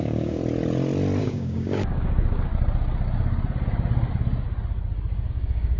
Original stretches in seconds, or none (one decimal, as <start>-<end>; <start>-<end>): 0.4-1.2; 2.5-5.3